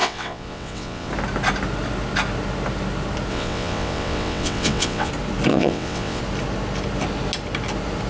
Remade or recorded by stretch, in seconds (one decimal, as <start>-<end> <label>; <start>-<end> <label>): 0.0-1.1 remade; 1.1-3.3 recorded; 3.3-5.1 remade; 5.1-5.5 recorded; 5.5-6.2 remade; 6.2-8.1 recorded

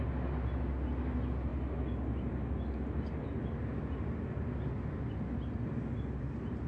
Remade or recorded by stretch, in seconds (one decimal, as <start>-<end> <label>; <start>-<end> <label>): 0.0-6.7 recorded

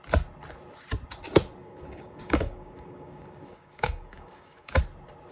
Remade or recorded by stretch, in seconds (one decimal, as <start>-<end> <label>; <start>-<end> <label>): 0.0-1.6 recorded; 1.6-4.8 remade; 4.8-5.3 recorded

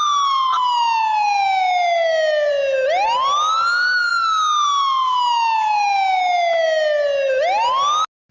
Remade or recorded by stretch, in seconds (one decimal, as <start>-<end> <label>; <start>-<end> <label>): 0.0-8.3 recorded

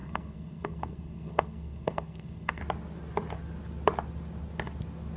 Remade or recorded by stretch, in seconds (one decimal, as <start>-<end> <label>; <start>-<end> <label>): 0.0-2.6 remade; 2.6-5.2 recorded